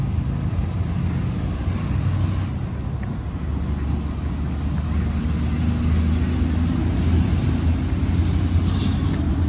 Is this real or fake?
real